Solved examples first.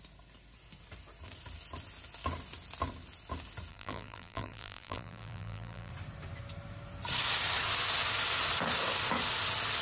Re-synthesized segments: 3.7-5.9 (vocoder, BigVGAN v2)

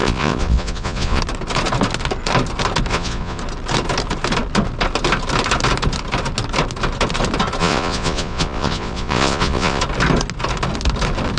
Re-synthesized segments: 0.0-1.2 (vocoder, Vocos); 2.9-3.4; 7.6-9.8